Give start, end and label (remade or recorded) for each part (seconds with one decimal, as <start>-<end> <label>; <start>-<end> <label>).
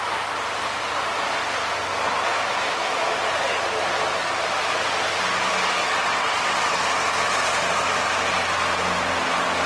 0.0-5.8 recorded; 5.8-6.8 remade; 6.8-9.7 recorded